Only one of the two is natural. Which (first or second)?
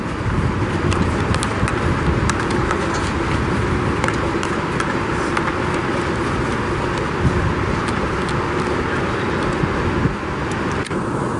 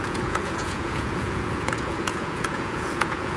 first